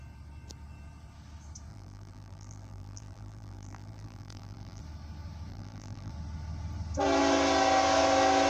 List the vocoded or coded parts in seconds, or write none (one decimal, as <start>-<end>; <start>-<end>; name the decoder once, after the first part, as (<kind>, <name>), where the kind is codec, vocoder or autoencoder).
1.7-4.8 (vocoder, BigVGAN v2); 5.5-6.1